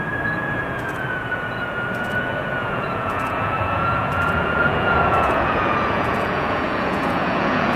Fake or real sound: fake